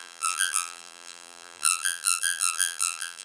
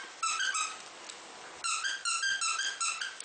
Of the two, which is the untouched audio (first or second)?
second